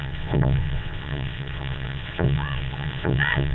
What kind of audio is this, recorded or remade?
remade